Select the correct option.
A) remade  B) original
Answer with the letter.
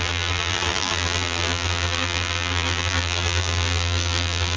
A